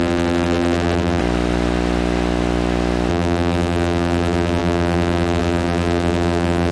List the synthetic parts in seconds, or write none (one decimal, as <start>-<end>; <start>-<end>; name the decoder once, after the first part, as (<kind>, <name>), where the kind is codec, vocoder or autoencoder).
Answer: 0.0-1.2 (vocoder, BigVGAN v2); 3.1-6.7